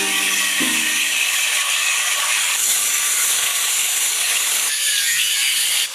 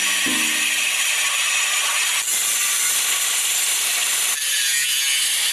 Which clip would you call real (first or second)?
second